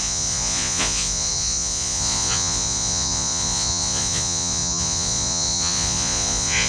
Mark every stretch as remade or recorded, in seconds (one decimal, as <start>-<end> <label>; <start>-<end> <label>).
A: 0.0-6.7 remade